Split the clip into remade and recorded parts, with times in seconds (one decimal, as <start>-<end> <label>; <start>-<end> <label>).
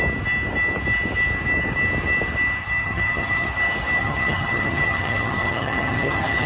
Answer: 0.0-2.6 recorded; 2.6-3.5 remade; 3.5-4.0 recorded; 4.0-6.5 remade